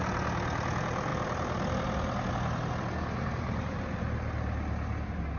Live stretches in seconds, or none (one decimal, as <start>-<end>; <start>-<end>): 0.0-5.4